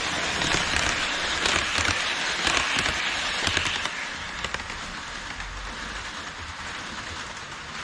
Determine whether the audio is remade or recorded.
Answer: recorded